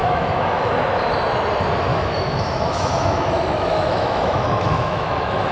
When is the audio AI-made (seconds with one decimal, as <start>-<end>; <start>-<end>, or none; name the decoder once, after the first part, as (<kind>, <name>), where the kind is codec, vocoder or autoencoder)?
0.0-0.7 (autoencoder, DAC-VAE); 1.9-5.5